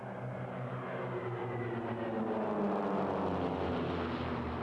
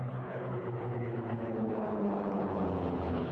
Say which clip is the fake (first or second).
second